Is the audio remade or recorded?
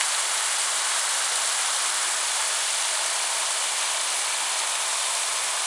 remade